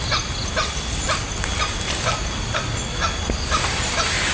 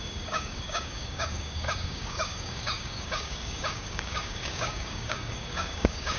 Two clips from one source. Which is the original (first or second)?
first